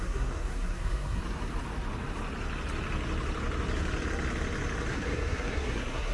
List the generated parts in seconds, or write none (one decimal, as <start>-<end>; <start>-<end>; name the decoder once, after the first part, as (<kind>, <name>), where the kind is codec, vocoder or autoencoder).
0.0-1.2 (codec, SNAC); 4.9-6.1

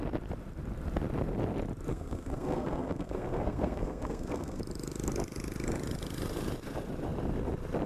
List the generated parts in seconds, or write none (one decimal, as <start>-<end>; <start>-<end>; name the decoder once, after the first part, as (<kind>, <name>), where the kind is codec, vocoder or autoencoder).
1.9-4.6 (codec, SNAC)